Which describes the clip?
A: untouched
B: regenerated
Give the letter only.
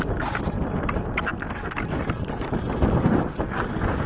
A